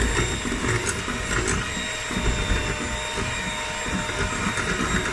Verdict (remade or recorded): recorded